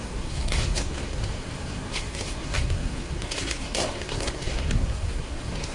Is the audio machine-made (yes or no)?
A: yes